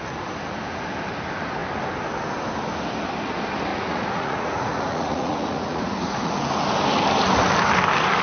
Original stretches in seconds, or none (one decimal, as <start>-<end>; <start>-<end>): 0.0-3.7; 6.3-8.2